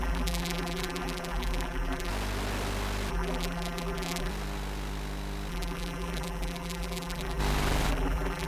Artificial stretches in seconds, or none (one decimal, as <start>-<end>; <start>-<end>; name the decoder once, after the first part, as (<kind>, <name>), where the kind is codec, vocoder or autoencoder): 0.0-2.1 (vocoder, BigVGAN v2); 3.1-4.3; 5.5-7.4; 7.9-8.5